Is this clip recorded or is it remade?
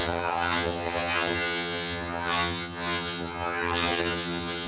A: remade